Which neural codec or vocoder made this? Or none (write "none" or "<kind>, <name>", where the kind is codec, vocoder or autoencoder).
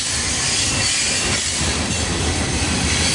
vocoder, BigVGAN v2